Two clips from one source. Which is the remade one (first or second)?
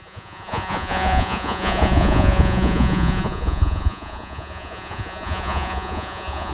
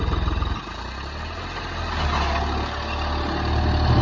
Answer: first